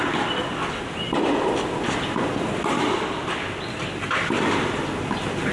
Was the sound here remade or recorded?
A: recorded